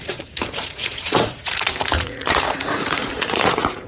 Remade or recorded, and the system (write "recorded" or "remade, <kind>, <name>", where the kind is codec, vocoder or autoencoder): remade, vocoder, Vocos